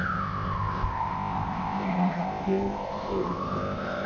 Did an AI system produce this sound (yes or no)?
yes